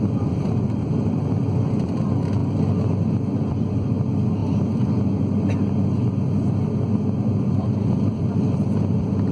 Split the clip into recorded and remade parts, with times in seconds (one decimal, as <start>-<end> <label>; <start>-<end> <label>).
0.0-2.4 remade; 2.4-3.5 recorded; 3.5-4.4 remade; 4.4-7.4 recorded; 7.4-9.3 remade